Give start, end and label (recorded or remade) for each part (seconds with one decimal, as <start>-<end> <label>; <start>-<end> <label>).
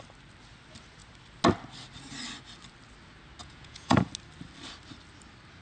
0.0-3.4 recorded; 3.4-4.1 remade; 4.1-5.6 recorded